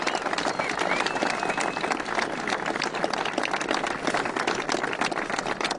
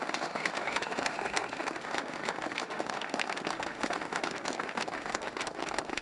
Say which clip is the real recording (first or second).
first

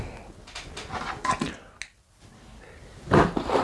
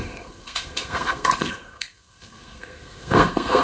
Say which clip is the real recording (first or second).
first